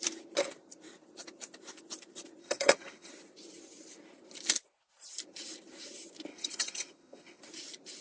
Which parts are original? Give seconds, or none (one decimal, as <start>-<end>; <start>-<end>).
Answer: 0.0-2.4; 3.1-6.3; 7.4-8.0